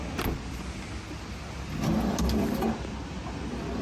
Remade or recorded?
recorded